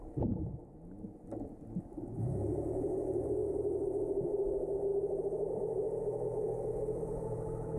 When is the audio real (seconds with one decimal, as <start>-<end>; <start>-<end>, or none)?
0.0-7.8